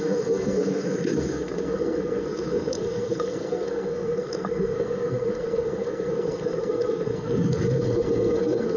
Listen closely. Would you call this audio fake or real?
fake